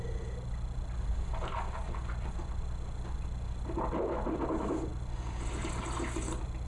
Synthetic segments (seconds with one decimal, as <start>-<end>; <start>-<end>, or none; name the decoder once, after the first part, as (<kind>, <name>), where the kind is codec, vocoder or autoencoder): none